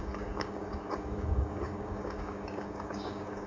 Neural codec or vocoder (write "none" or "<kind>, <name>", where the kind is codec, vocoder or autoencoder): codec, DAC